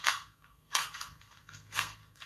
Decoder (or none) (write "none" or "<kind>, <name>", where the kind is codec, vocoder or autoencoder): codec, SNAC